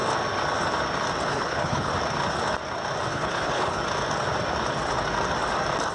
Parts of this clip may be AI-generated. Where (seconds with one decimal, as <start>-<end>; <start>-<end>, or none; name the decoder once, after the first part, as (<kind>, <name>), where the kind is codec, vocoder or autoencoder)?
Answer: 1.3-1.9 (codec, HILCodec); 3.1-3.8